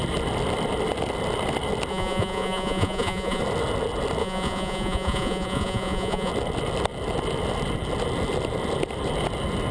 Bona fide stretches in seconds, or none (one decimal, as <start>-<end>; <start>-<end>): 0.0-1.9; 3.4-4.2; 6.3-9.7